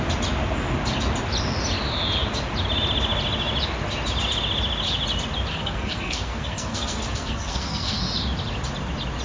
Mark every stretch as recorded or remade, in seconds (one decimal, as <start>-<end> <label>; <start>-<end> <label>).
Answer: 0.0-5.5 recorded; 5.5-8.0 remade; 8.0-9.2 recorded